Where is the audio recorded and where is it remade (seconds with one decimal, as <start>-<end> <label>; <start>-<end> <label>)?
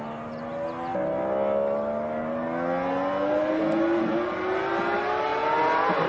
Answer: 0.0-6.1 recorded